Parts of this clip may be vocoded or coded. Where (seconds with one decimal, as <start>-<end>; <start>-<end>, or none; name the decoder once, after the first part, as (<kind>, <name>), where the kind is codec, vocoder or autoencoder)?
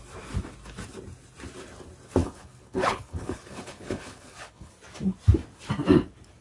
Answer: 2.2-4.7 (codec, HILCodec)